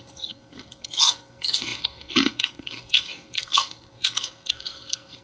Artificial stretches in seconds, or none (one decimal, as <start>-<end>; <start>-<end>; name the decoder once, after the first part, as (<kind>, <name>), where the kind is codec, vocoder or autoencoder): 0.0-5.2 (codec, SNAC)